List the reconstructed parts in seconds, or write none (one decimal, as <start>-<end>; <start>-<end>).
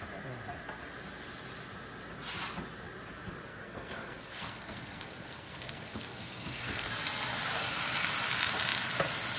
3.5-6.9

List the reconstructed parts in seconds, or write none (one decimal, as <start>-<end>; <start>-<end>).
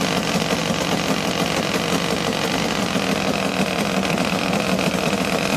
0.0-0.6; 4.0-5.6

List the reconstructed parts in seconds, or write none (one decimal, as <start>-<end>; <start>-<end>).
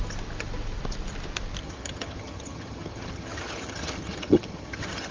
1.6-5.1